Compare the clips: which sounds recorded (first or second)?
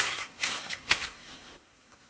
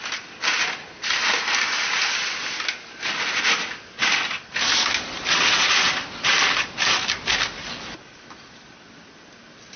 second